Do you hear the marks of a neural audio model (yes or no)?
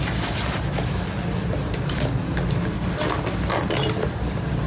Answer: no